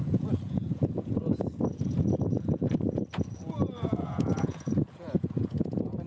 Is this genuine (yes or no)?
no